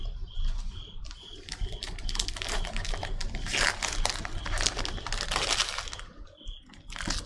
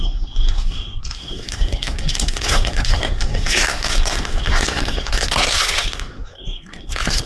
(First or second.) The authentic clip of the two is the first